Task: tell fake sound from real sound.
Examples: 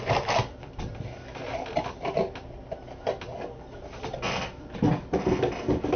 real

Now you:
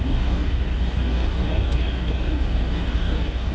fake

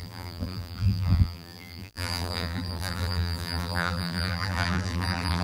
fake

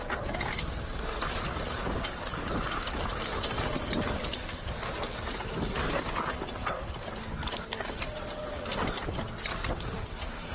real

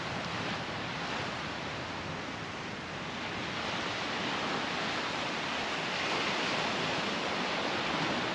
real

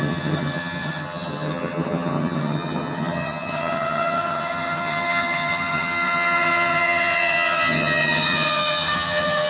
fake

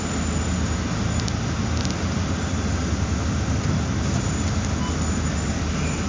real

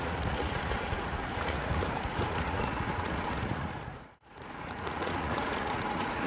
fake